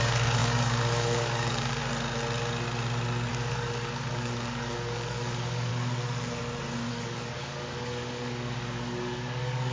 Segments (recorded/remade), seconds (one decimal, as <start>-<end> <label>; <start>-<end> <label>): 0.0-1.8 remade; 1.8-3.3 recorded; 3.3-5.7 remade; 5.7-6.9 recorded; 6.9-9.7 remade